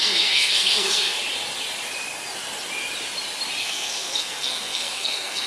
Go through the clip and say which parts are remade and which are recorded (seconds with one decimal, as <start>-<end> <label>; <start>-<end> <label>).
0.0-1.2 remade; 1.2-3.6 recorded; 3.6-5.5 remade